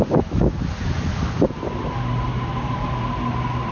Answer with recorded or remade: recorded